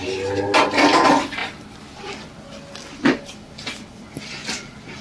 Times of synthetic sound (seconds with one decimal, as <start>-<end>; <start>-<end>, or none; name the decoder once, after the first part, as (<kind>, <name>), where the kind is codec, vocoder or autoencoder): none